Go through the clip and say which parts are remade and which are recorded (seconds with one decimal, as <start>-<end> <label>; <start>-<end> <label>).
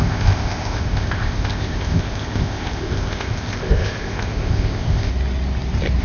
0.0-5.1 remade; 5.1-6.0 recorded